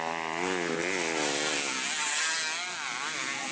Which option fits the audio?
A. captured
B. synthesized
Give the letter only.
A